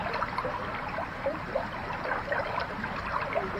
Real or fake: real